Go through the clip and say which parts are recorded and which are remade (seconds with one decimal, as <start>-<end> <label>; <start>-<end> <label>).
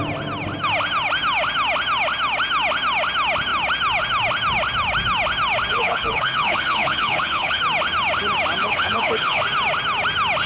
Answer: 0.0-5.7 recorded; 5.7-7.6 remade; 7.6-8.6 recorded; 8.6-9.4 remade; 9.4-10.5 recorded